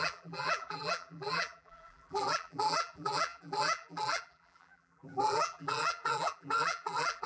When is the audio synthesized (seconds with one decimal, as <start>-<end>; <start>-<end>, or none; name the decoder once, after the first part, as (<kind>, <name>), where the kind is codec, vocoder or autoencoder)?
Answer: 0.0-7.3 (vocoder, BigVGAN v2)